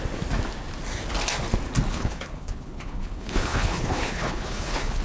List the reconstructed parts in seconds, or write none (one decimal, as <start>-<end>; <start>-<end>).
1.9-5.0